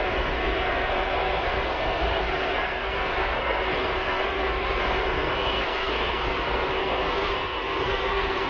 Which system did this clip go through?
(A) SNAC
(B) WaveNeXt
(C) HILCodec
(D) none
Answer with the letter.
A